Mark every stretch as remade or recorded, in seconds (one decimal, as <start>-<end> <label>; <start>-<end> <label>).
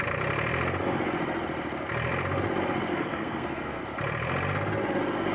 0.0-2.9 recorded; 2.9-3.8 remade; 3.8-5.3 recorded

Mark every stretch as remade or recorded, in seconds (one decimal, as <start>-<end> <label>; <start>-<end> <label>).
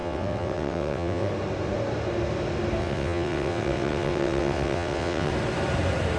0.0-1.3 remade; 1.3-2.8 recorded; 2.8-5.3 remade; 5.3-6.2 recorded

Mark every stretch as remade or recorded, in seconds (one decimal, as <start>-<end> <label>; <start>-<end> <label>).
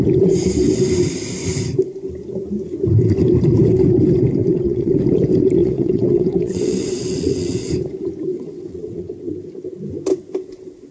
0.0-4.4 recorded; 4.4-4.9 remade; 4.9-5.6 recorded; 5.6-7.7 remade; 7.7-8.3 recorded; 8.3-9.3 remade; 9.3-10.9 recorded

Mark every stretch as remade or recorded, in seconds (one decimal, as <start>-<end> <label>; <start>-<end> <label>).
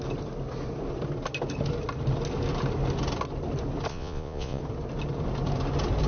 0.0-3.9 recorded; 3.9-4.6 remade; 4.6-6.1 recorded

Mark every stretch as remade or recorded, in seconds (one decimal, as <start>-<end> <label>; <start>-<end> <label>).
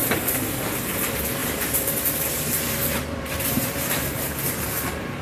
0.0-1.0 remade; 1.0-1.4 recorded; 1.4-4.5 remade; 4.5-5.2 recorded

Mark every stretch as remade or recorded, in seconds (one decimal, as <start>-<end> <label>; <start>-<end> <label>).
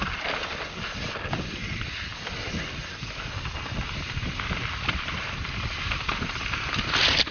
0.0-7.3 recorded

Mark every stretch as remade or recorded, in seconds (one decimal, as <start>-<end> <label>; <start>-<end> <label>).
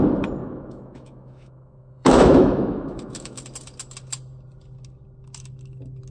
0.0-0.4 recorded; 0.4-3.4 remade; 3.4-6.1 recorded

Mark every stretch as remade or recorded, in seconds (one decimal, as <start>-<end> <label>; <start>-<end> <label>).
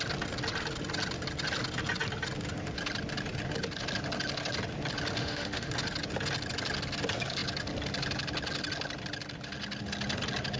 0.0-5.2 recorded; 5.2-5.7 remade; 5.7-10.6 recorded